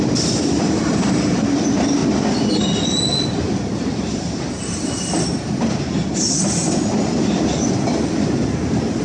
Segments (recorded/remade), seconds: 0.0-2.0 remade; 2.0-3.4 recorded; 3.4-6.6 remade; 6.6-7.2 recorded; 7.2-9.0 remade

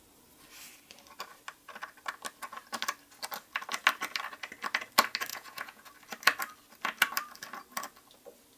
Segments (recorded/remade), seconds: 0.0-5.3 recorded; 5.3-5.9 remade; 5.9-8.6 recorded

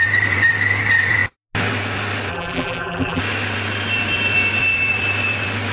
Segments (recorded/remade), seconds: 0.0-2.3 recorded; 2.3-3.2 remade; 3.2-5.7 recorded